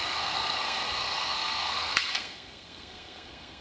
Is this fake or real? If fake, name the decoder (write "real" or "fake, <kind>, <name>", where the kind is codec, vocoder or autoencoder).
fake, codec, SNAC